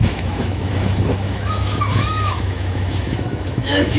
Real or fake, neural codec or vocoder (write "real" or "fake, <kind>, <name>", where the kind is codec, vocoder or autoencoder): fake, autoencoder, DAC-VAE